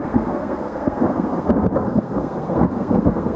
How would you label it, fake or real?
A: fake